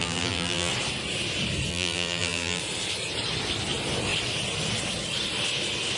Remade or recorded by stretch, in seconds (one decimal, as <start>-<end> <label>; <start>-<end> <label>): 0.0-0.7 remade; 0.7-1.7 recorded; 1.7-2.6 remade; 2.6-6.0 recorded